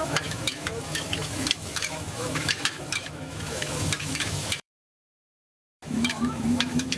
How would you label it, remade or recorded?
remade